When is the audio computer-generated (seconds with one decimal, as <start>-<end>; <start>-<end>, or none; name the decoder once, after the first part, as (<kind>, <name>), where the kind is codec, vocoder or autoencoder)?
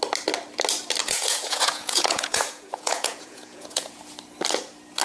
1.0-4.0 (vocoder, Vocos)